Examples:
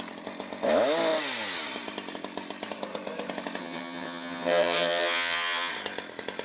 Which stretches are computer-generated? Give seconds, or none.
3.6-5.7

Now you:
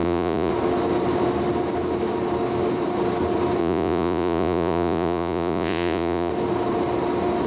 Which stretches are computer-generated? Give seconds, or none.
0.0-0.5; 3.6-6.3

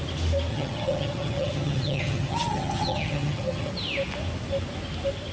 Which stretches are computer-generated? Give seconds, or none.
0.5-3.7

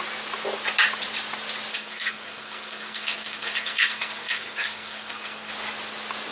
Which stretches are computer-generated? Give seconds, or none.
1.7-5.5

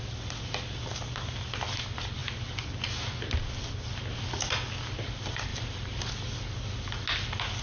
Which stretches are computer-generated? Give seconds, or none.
5.5-6.1

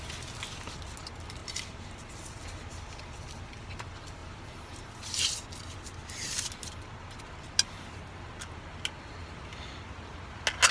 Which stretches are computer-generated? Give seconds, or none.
1.4-2.2; 4.2-4.9

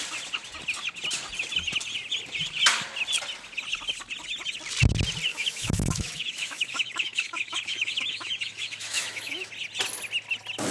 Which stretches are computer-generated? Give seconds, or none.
5.3-9.5

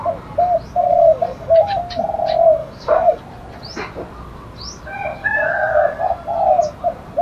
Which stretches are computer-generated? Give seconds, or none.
0.9-1.8; 2.6-3.2; 5.2-6.0